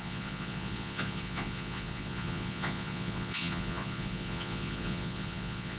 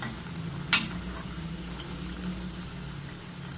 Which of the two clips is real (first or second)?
second